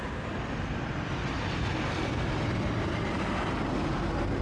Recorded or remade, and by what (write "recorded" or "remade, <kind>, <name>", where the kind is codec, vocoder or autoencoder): recorded